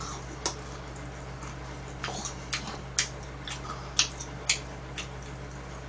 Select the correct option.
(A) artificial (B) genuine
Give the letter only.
B